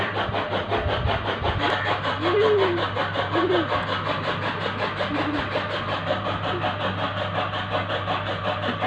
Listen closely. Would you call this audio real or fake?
real